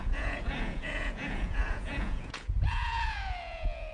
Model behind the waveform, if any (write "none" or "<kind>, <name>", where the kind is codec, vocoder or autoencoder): vocoder, Vocos